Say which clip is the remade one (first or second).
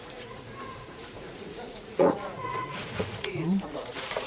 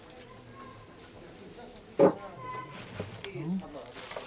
first